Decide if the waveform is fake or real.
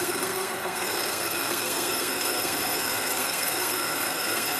fake